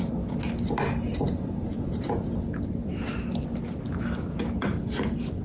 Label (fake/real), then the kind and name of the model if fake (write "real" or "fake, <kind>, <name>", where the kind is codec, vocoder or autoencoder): real